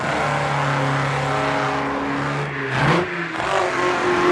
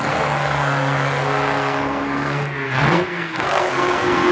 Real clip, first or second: first